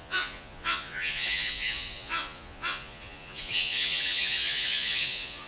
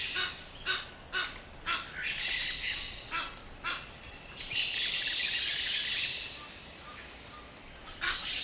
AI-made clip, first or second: first